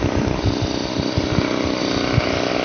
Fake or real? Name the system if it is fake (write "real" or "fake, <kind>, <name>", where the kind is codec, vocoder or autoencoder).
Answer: real